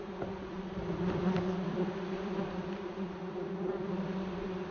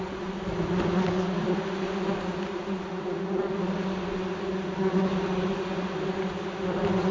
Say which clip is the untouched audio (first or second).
second